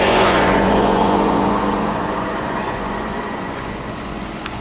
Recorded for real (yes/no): no